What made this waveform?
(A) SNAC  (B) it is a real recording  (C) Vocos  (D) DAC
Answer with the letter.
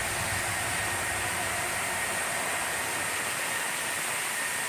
B